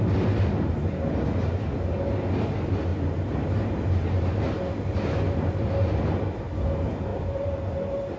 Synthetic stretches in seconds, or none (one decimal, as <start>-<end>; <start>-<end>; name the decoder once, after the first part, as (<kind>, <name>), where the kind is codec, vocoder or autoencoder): 2.9-5.5 (vocoder, BigVGAN v2); 7.1-8.2